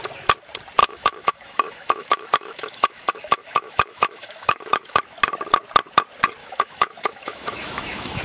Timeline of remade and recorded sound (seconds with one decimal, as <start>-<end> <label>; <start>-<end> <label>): 0.0-0.8 recorded; 0.8-5.0 remade; 5.0-6.4 recorded; 6.4-8.2 remade